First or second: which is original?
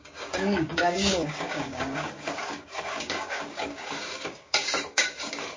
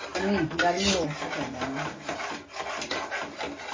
second